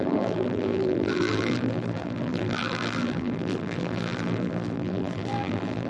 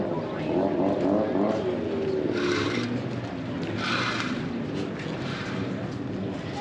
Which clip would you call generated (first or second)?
first